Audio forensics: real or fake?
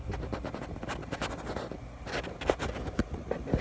real